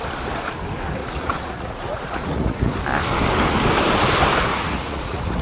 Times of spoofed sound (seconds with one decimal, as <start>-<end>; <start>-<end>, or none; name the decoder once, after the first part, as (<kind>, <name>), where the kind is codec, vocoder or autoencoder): 1.0-2.7 (vocoder, Vocos); 4.5-5.4